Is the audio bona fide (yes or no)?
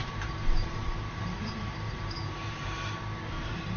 no